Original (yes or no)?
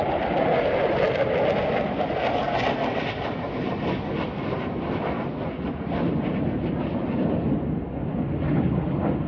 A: yes